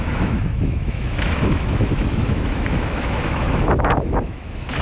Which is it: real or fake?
fake